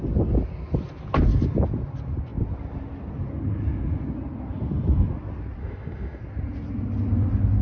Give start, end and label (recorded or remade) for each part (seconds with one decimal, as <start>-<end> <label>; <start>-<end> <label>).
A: 0.0-5.6 recorded; 5.6-6.2 remade; 6.2-7.6 recorded